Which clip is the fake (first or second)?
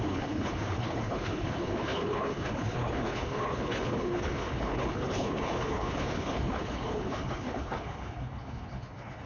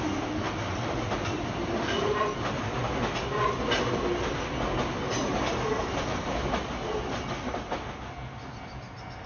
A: first